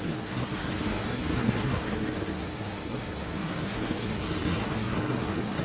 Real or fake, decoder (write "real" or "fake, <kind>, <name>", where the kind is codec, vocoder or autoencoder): fake, codec, SNAC